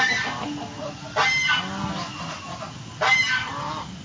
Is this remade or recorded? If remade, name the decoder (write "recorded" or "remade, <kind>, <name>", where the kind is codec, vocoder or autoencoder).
recorded